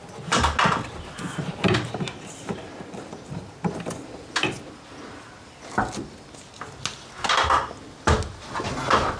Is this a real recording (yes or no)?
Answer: yes